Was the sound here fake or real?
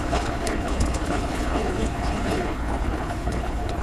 fake